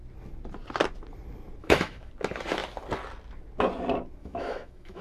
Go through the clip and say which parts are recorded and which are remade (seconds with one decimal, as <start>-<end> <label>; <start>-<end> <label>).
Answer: 0.0-1.6 recorded; 1.6-2.1 remade; 2.1-4.2 recorded; 4.2-5.0 remade